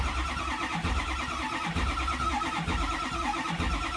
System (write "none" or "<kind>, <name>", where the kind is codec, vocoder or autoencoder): none